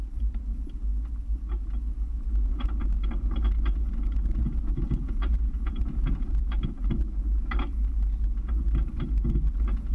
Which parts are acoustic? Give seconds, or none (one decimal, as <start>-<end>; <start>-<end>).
0.0-4.4; 6.6-9.9